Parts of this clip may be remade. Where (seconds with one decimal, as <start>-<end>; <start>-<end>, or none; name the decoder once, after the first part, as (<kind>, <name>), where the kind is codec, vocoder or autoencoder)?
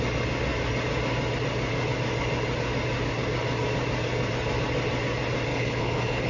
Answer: 5.5-6.3 (codec, HILCodec)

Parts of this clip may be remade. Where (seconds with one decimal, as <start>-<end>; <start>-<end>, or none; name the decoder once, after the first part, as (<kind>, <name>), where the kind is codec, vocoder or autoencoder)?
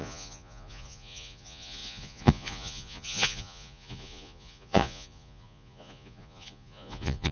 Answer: 0.0-7.3 (vocoder, Vocos)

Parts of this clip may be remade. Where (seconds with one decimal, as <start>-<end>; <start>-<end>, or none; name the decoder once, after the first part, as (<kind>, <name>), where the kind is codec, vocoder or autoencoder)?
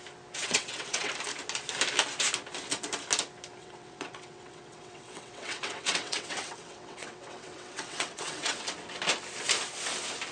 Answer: 0.4-1.1 (vocoder, WaveNeXt); 3.6-8.6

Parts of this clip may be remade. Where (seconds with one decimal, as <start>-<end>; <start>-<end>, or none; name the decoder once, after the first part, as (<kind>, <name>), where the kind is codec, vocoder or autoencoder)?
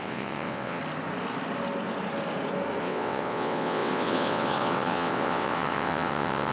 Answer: 0.0-0.8 (vocoder, WaveNeXt); 2.8-6.5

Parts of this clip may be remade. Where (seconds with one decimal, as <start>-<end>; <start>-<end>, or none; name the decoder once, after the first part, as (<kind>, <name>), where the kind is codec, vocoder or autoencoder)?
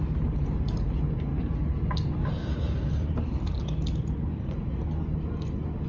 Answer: none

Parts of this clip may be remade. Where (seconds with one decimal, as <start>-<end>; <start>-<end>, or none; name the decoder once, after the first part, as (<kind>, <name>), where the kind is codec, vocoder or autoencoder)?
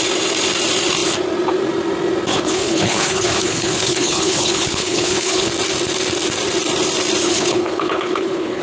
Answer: 2.3-5.5 (codec, HILCodec); 7.2-8.6